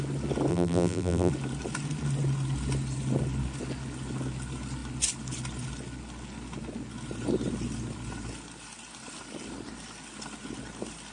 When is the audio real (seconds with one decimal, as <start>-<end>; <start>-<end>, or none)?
0.0-0.5; 1.3-11.1